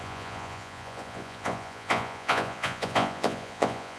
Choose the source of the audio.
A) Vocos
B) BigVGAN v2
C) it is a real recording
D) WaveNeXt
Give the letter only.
A